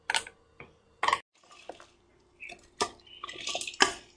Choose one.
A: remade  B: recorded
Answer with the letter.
B